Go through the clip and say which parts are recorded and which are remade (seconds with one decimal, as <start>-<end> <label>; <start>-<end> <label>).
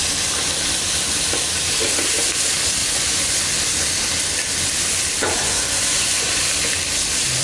0.0-2.8 recorded; 2.8-3.4 remade; 3.4-5.4 recorded; 5.4-6.4 remade; 6.4-7.4 recorded